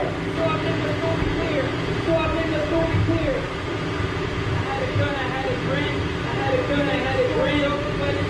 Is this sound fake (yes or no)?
no